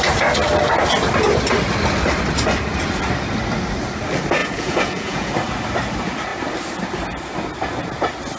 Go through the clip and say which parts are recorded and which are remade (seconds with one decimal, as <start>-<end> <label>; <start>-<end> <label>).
0.0-4.4 recorded; 4.4-5.3 remade; 5.3-8.4 recorded